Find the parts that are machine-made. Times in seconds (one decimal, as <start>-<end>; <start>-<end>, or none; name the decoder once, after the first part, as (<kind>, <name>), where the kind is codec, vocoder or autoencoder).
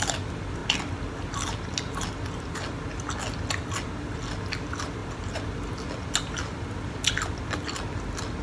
none